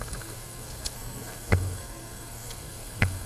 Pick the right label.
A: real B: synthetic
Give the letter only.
B